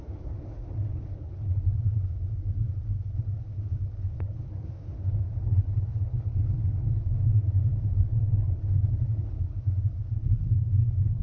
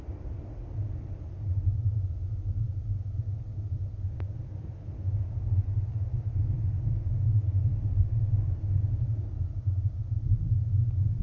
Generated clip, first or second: first